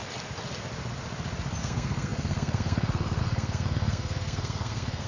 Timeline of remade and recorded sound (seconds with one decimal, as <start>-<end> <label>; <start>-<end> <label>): 0.0-1.6 recorded; 1.6-5.1 remade